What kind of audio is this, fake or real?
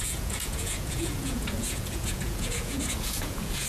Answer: fake